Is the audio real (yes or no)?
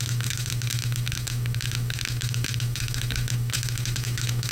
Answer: no